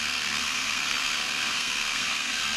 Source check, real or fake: fake